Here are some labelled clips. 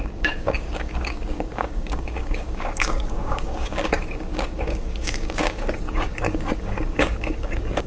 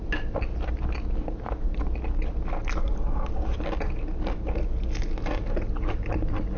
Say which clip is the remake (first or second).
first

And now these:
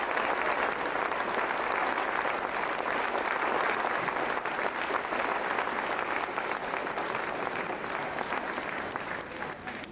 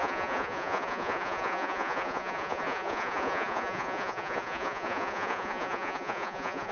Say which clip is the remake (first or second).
second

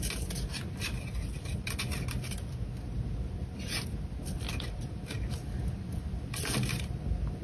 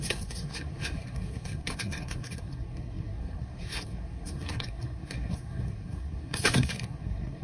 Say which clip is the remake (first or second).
second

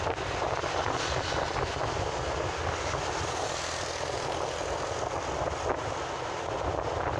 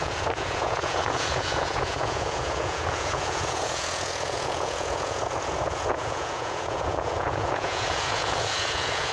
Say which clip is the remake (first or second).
second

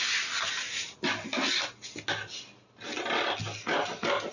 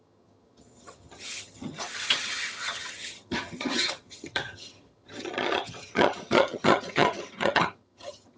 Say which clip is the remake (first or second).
second